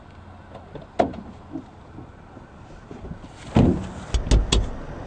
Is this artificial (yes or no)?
no